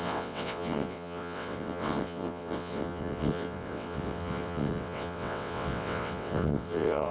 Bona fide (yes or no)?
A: no